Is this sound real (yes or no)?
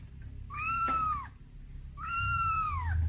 no